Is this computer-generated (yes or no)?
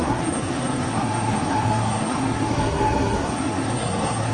yes